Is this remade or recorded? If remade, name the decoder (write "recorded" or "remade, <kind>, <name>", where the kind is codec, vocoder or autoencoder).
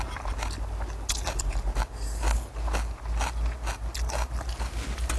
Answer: recorded